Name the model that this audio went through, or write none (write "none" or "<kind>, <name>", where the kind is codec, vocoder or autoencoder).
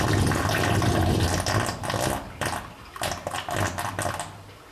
none